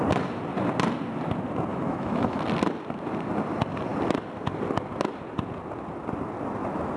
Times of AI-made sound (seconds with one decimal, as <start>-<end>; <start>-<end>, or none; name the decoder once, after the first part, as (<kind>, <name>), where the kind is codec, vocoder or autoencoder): 1.7-2.4 (autoencoder, DAC-VAE)

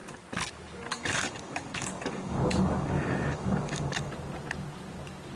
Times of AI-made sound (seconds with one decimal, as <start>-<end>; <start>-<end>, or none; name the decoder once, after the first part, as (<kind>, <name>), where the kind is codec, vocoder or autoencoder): 0.9-4.1 (codec, DAC)

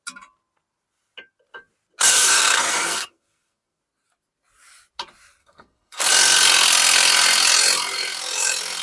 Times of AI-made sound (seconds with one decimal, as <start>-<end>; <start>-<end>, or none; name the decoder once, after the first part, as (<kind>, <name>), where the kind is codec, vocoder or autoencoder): 2.1-3.8 (codec, SNAC); 5.4-6.1

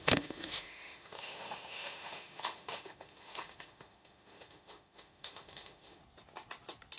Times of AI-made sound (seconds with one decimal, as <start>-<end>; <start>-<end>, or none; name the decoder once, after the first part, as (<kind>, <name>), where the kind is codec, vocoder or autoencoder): 0.0-6.0 (autoencoder, DAC-VAE)

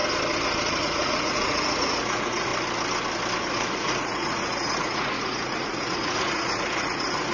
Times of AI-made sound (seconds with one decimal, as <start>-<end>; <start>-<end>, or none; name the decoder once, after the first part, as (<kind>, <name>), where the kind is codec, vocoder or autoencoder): 0.8-2.5 (vocoder, Vocos); 3.4-7.3

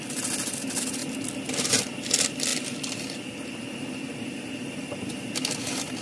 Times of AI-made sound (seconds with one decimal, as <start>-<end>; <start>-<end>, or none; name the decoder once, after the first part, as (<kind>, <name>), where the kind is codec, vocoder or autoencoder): none

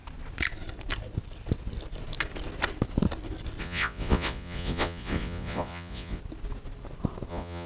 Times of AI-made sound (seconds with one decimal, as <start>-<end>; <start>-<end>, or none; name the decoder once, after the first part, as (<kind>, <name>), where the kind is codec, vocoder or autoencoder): 3.6-6.2 (vocoder, Vocos); 7.3-7.7